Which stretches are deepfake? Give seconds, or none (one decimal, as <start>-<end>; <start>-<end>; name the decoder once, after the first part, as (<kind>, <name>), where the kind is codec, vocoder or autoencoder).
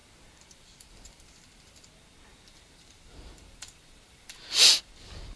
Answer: 0.0-1.9 (vocoder, BigVGAN v2); 2.3-4.9